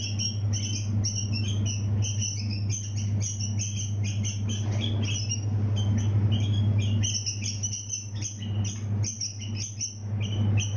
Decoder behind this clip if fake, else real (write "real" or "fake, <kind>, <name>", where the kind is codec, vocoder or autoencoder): real